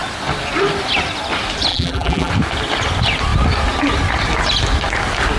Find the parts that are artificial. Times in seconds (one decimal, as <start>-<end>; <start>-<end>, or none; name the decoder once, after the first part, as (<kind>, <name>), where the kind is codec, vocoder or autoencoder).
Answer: 1.7-2.3 (vocoder, BigVGAN v2)